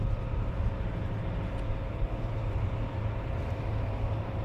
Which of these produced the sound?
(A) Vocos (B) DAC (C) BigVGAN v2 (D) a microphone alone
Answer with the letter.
D